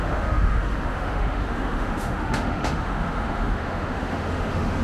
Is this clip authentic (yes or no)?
no